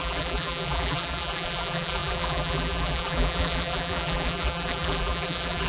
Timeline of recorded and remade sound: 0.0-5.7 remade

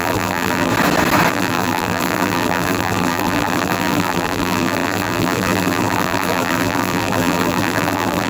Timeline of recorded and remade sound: 0.0-0.7 remade; 0.7-1.3 recorded; 1.3-8.3 remade

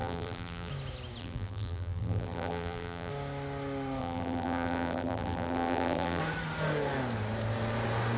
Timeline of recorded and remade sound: 0.0-0.7 remade; 0.7-1.2 recorded; 1.2-3.1 remade; 3.1-4.0 recorded; 4.0-6.2 remade; 6.2-8.2 recorded